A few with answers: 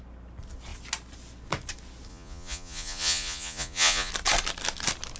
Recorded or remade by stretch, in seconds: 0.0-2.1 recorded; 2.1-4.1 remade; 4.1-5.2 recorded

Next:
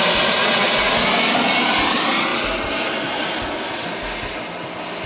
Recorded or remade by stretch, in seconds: 0.0-0.4 recorded; 0.4-0.9 remade; 0.9-5.1 recorded